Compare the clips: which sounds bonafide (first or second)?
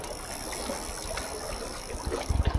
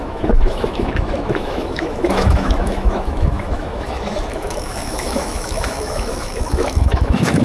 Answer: first